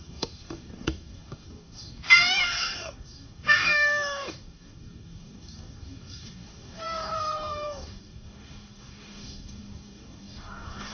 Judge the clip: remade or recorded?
remade